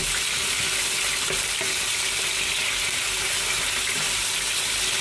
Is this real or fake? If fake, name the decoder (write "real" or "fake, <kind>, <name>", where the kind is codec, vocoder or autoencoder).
real